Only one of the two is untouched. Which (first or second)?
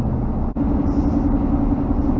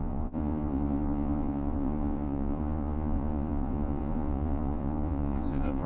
first